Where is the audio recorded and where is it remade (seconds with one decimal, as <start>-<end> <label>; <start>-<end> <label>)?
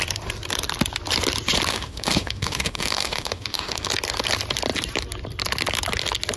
0.0-1.7 recorded; 1.7-3.9 remade; 3.9-6.4 recorded